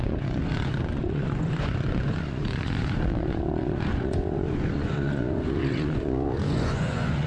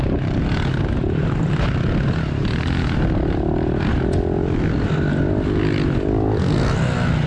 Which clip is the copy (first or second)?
first